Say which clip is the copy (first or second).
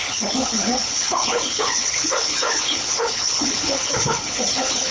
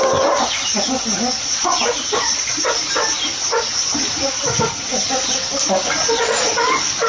first